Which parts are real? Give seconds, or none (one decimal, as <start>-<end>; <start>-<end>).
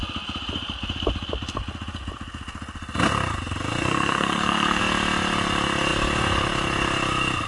0.0-3.8; 4.8-7.5